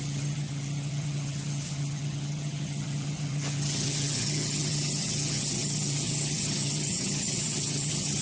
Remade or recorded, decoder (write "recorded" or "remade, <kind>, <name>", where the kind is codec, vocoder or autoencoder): remade, vocoder, HiFi-GAN